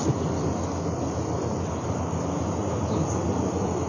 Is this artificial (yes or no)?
no